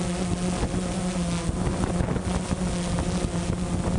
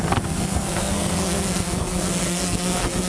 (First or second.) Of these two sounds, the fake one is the second